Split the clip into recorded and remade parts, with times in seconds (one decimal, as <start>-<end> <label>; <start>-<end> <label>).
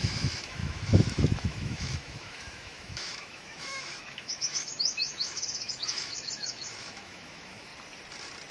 0.0-7.7 remade; 7.7-8.5 recorded